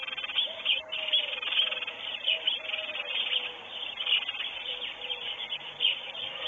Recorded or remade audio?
recorded